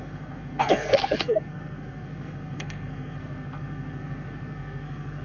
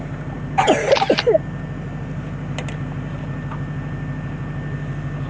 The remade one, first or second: first